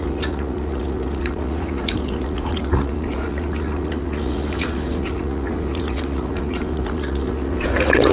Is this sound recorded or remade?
remade